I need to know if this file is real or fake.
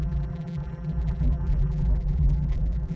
fake